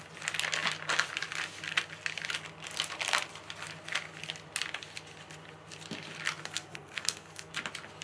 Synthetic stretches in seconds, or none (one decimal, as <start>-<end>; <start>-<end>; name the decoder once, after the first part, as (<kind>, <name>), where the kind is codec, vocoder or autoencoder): 6.4-7.5 (codec, SNAC)